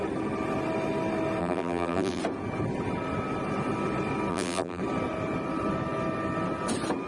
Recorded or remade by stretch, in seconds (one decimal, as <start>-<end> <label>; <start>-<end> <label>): 0.0-1.4 recorded; 1.4-2.2 remade; 2.2-4.3 recorded; 4.3-4.8 remade; 4.8-7.1 recorded